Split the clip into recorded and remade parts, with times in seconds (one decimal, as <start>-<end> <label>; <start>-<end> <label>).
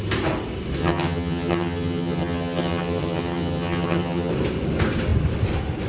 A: 0.0-0.8 recorded; 0.8-4.3 remade; 4.3-5.9 recorded